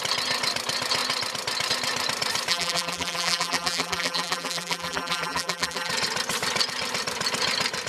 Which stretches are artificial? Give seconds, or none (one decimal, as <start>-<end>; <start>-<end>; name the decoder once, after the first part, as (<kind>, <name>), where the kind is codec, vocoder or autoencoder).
2.5-5.9 (vocoder, BigVGAN v2)